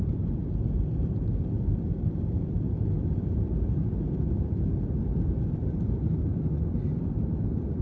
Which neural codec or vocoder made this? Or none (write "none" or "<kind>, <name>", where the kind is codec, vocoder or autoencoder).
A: vocoder, BigVGAN v2